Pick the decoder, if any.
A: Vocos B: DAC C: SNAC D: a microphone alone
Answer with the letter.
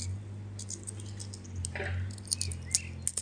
D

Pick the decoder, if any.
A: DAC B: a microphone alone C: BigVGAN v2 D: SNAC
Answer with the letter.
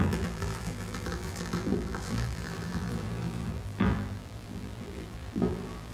C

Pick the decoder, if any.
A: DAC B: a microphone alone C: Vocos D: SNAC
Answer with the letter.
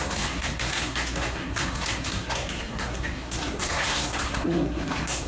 D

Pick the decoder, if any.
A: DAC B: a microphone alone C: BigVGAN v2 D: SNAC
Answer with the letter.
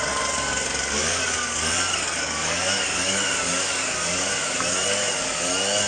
A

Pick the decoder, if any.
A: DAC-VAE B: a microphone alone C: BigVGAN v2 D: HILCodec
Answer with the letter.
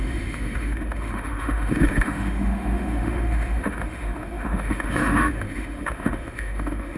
A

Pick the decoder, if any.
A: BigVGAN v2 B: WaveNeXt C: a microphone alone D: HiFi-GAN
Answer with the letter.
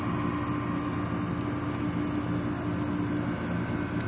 C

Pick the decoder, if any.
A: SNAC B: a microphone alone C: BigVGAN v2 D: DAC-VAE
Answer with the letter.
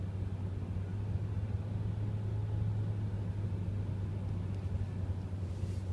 B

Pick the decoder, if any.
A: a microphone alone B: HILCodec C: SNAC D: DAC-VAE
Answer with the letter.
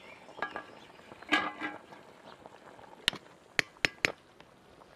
A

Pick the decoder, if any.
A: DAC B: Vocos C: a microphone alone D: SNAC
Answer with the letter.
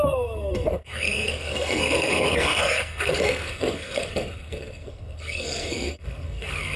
D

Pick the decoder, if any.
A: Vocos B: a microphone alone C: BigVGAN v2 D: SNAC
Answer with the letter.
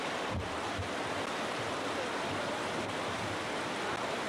B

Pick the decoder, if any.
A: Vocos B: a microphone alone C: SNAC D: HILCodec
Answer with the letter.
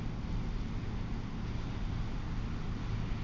B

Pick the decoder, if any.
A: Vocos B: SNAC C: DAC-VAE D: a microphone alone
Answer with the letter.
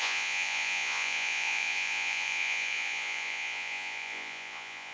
A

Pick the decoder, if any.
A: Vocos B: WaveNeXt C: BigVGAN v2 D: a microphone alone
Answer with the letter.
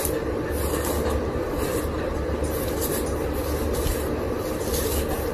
D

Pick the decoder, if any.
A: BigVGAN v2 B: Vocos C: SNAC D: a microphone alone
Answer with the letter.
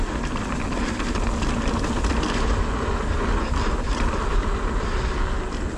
D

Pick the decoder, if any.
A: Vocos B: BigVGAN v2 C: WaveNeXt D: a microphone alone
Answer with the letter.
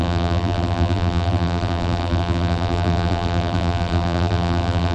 B